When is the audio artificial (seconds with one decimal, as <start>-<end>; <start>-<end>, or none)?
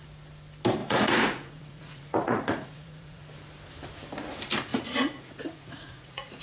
0.8-3.2; 4.7-6.4